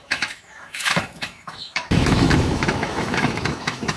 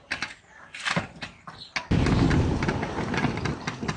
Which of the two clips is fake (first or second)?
first